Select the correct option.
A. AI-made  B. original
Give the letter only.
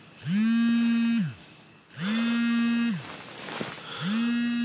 B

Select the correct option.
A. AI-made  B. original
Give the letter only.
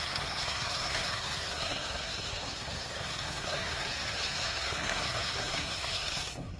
A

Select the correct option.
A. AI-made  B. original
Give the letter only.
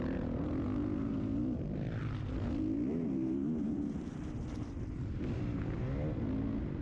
B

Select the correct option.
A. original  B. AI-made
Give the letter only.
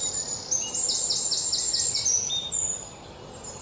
A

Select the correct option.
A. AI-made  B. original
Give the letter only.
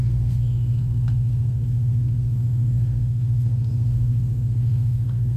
A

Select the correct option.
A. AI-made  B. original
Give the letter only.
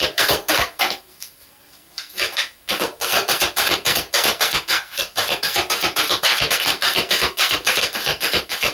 A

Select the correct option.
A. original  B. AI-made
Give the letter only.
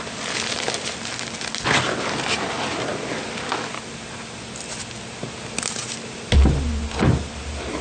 A